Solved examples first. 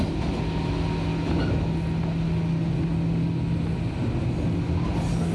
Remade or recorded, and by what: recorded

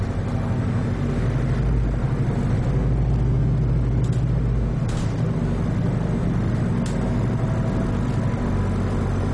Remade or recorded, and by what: recorded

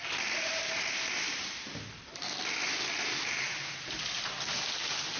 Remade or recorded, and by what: recorded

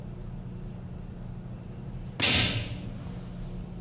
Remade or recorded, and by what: recorded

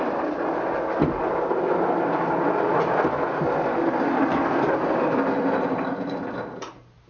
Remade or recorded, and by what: recorded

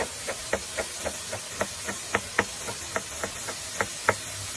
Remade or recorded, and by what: recorded